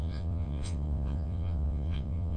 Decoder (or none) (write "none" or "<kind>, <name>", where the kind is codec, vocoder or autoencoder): vocoder, WaveNeXt